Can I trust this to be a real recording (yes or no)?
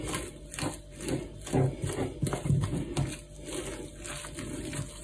yes